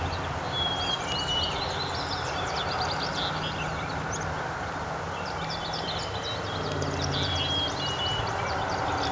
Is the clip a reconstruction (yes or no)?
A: no